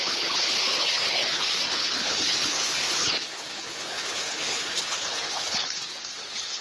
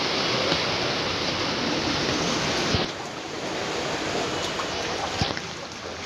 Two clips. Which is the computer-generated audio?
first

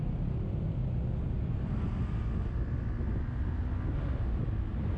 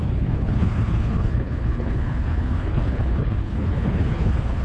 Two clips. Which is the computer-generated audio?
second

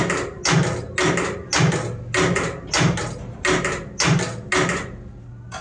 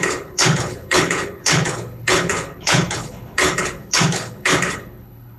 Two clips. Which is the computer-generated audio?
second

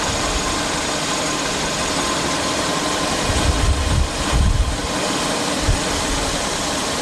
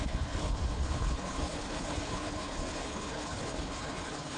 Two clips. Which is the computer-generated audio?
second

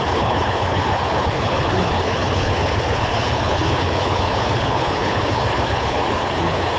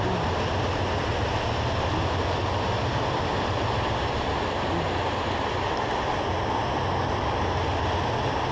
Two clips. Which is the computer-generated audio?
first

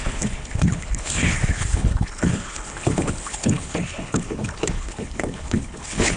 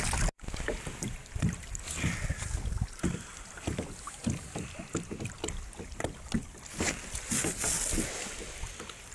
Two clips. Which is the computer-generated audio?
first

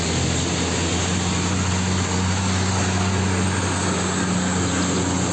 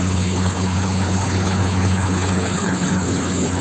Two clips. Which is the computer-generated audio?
second